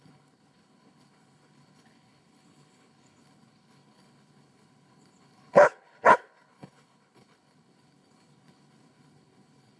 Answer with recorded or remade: remade